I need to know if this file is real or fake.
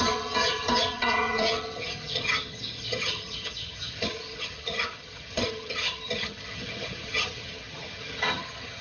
fake